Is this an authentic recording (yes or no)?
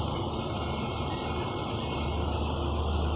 yes